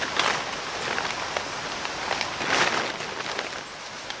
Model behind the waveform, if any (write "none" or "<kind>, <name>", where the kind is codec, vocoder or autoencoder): none